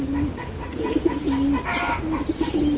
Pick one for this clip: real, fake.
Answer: real